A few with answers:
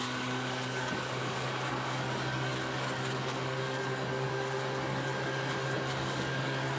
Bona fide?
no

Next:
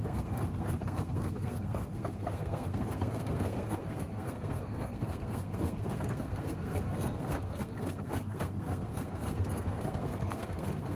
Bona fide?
no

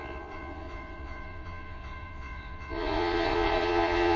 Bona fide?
no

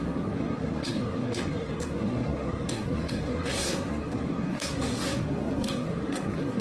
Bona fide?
no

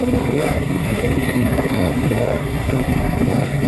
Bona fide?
no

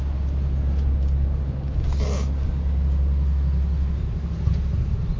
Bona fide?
yes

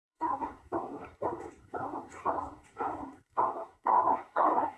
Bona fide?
no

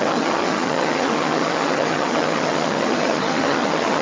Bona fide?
no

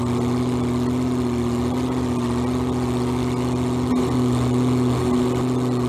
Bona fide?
yes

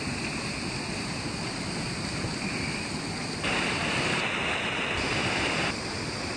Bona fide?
yes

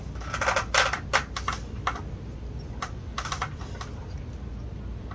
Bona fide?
yes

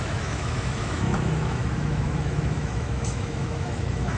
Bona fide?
no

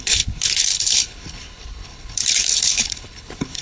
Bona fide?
no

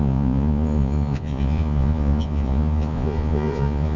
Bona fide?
no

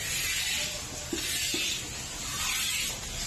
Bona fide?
yes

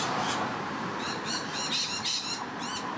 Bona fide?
no